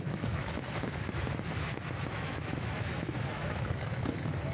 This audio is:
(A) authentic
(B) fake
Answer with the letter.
B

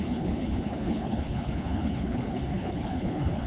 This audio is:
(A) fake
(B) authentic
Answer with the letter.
A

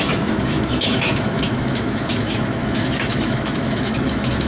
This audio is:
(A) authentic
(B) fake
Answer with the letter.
B